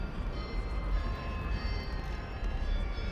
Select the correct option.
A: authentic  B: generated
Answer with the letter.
B